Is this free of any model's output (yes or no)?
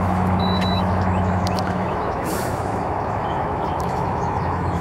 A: no